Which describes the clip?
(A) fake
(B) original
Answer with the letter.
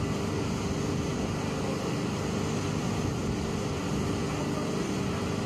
B